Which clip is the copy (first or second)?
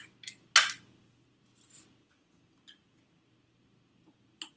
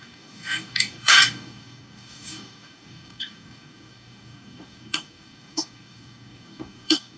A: second